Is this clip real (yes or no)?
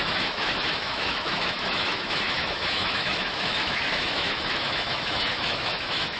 no